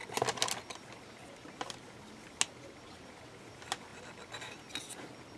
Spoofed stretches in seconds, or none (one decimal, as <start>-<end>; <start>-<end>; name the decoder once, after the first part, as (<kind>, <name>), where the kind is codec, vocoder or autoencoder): none